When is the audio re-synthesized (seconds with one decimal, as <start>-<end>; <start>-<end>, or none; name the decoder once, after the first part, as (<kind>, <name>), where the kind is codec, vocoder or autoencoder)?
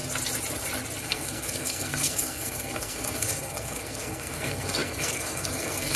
1.0-6.0 (codec, SNAC)